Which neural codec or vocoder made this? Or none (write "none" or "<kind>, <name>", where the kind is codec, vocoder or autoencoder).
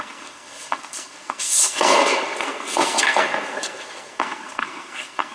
codec, SNAC